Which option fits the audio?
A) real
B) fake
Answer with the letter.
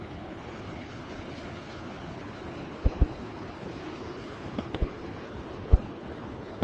B